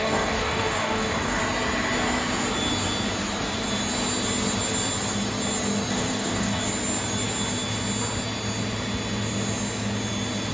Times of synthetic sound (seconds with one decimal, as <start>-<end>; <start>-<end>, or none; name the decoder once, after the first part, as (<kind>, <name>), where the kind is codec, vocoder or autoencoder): 0.0-1.4 (codec, DAC); 5.9-6.6